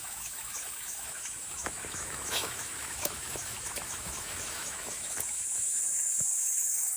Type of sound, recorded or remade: remade